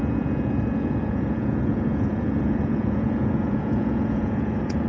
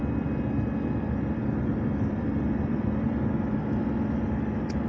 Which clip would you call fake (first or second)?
first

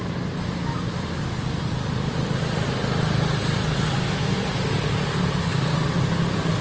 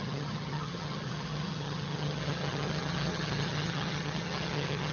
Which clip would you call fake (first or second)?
second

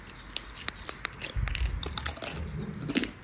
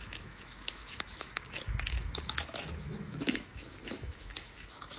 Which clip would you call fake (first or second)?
second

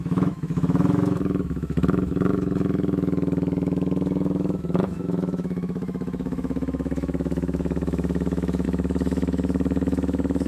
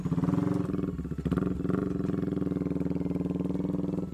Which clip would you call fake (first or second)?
first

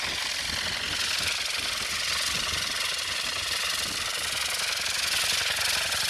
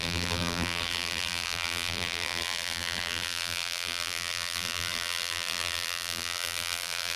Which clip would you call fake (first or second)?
second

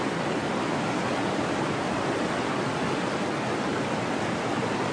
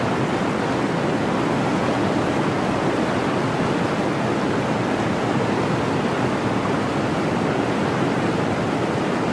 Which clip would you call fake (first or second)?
first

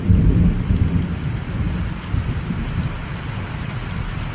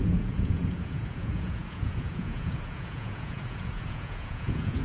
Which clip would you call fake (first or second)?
second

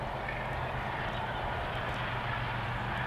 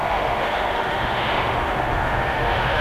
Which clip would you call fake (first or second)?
second